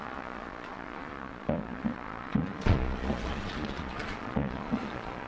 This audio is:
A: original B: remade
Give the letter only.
B